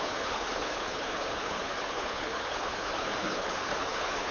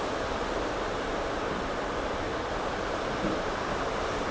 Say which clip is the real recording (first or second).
second